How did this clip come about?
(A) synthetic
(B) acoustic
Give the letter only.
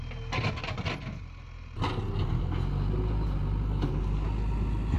B